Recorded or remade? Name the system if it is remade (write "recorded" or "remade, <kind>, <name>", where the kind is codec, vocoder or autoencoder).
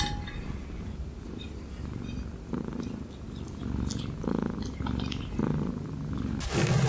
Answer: recorded